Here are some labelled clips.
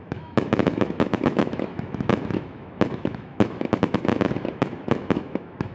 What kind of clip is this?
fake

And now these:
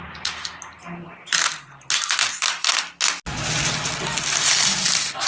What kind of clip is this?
real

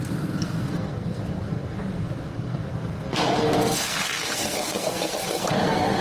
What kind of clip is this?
fake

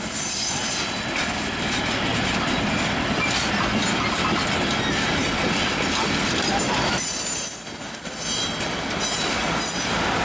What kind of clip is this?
real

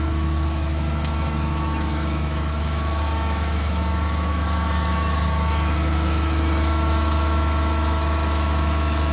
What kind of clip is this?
fake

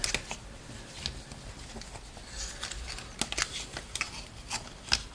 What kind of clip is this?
real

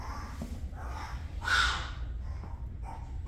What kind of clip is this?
real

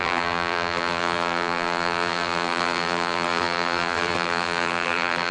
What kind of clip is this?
fake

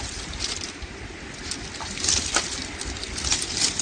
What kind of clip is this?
real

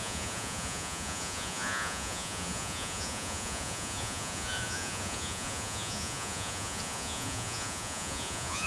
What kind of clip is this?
fake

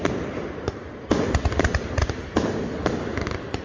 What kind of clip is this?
real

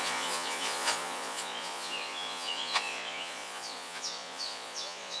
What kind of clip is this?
fake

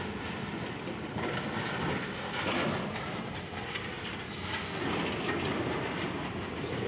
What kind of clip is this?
real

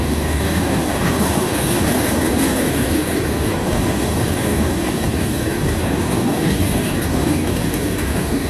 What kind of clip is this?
fake